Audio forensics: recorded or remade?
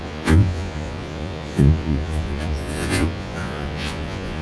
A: remade